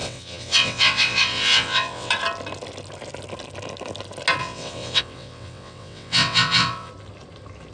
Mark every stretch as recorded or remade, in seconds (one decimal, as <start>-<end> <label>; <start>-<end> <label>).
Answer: 0.0-2.1 remade; 2.1-4.4 recorded; 4.4-6.9 remade; 6.9-7.7 recorded